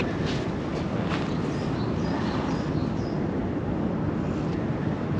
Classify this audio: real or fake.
real